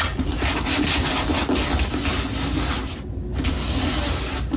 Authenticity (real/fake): real